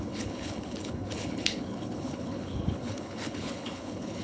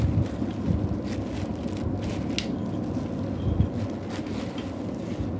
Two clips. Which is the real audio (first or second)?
second